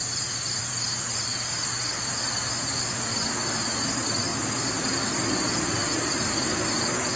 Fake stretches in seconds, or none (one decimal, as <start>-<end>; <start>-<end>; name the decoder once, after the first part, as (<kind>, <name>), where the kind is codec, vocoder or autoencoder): 0.0-1.5 (vocoder, BigVGAN v2); 3.4-4.3; 5.9-7.2